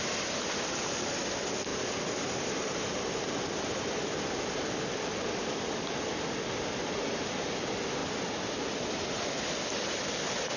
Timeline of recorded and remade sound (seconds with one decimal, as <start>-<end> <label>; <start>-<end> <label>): 0.0-10.6 recorded